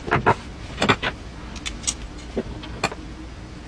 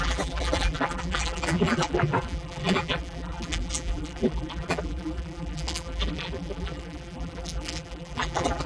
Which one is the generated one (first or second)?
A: second